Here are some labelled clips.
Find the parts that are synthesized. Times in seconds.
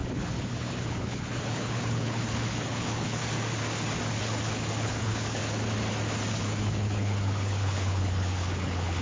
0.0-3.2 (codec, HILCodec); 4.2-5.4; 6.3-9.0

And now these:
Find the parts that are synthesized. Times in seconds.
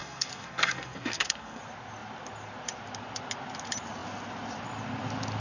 0.0-1.6 (codec, SNAC)